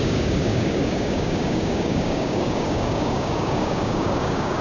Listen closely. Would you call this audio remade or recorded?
remade